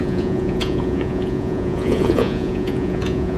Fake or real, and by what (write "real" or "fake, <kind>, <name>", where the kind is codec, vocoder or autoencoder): fake, vocoder, Vocos